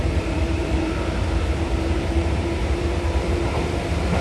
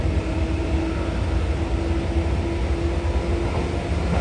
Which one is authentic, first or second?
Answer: second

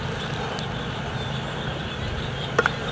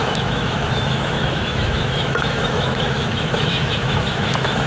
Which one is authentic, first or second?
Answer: first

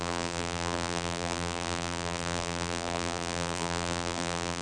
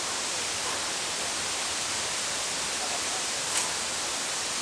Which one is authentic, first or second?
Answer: second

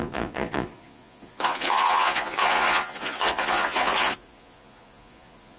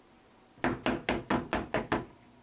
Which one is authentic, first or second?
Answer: second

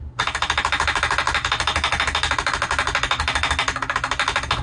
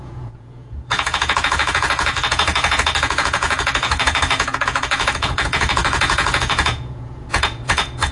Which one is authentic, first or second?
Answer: first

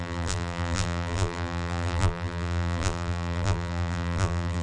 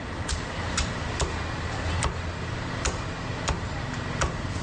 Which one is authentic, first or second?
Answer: second